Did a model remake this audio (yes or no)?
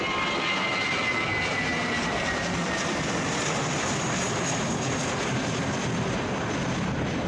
yes